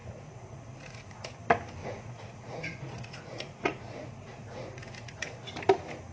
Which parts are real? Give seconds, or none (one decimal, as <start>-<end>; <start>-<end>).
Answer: 1.3-1.8; 5.5-6.1